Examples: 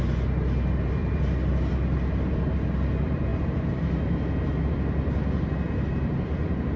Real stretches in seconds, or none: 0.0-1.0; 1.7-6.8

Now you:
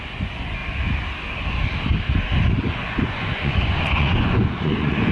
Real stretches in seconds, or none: 0.6-2.7

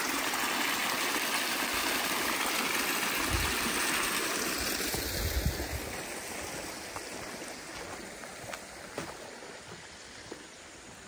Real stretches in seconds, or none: 0.0-11.1

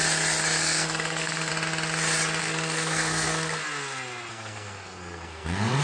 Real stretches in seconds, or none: 0.0-0.6; 1.5-2.4; 3.6-4.3

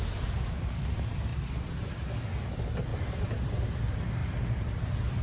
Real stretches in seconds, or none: 0.0-5.2